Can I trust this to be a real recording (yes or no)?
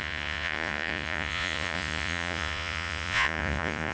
no